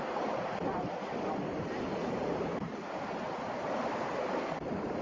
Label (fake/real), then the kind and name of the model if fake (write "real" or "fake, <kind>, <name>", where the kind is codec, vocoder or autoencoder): fake, vocoder, BigVGAN v2